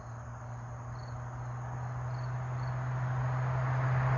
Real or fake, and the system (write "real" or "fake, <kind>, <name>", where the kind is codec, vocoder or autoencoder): real